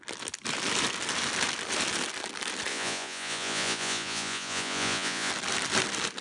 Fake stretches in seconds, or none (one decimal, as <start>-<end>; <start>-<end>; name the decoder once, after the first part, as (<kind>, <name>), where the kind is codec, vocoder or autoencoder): 2.7-5.3 (vocoder, Vocos)